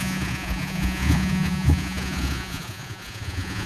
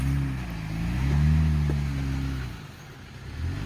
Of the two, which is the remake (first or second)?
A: first